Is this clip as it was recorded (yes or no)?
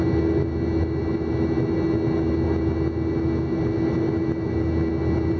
yes